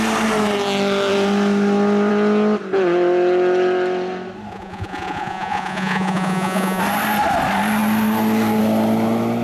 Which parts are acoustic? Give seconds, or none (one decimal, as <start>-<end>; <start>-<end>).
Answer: 0.0-4.5; 6.8-9.4